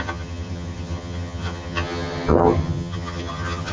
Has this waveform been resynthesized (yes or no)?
yes